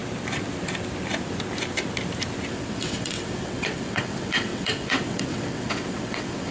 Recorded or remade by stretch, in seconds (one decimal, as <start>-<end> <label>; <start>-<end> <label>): 0.0-2.5 recorded; 2.5-6.5 remade